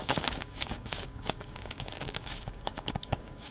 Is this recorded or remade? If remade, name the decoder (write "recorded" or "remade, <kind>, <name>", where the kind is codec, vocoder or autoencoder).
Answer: remade, codec, DAC